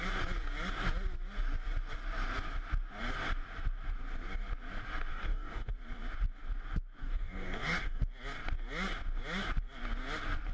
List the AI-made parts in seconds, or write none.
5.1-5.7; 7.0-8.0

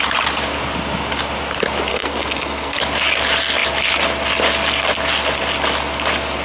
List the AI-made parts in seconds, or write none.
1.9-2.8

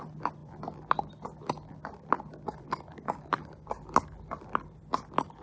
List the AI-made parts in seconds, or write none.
none

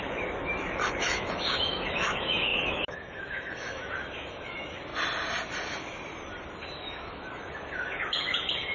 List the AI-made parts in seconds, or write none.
0.0-4.9; 6.6-8.7

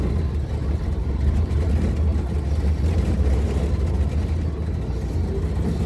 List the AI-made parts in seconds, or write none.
0.6-1.7

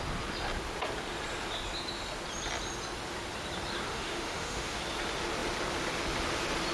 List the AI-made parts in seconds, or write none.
3.9-4.8